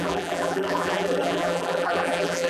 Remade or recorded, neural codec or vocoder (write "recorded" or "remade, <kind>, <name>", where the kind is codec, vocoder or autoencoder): remade, vocoder, BigVGAN v2